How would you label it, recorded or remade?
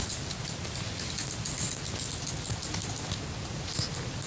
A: recorded